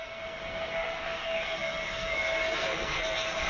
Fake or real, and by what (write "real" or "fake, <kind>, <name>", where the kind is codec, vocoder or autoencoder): fake, codec, SNAC